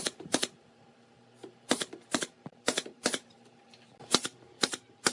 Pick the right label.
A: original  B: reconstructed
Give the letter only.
B